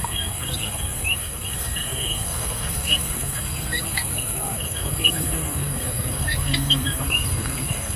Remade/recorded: remade